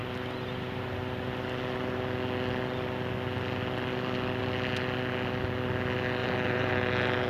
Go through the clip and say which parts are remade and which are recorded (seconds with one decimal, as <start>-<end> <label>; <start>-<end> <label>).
0.0-6.2 recorded; 6.2-6.7 remade; 6.7-7.3 recorded

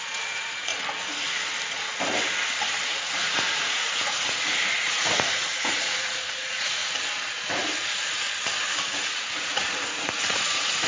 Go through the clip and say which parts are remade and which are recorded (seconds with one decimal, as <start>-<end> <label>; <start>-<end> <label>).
0.0-0.7 remade; 0.7-2.9 recorded; 2.9-6.8 remade; 6.8-8.9 recorded; 8.9-10.9 remade

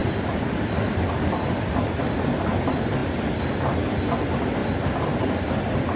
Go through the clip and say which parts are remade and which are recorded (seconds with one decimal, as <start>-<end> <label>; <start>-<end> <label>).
0.0-2.6 remade; 2.6-4.6 recorded; 4.6-5.4 remade; 5.4-6.0 recorded

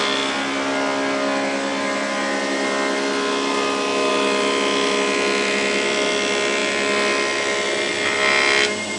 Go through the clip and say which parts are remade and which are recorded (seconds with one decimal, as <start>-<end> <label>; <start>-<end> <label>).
0.0-9.0 recorded

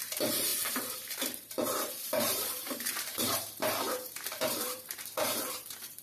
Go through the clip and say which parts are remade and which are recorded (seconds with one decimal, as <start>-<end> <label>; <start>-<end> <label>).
0.0-6.0 remade

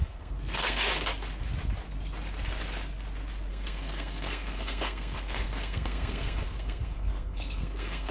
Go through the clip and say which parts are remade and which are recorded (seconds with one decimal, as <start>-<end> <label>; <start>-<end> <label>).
0.0-0.9 remade; 0.9-3.5 recorded; 3.5-8.1 remade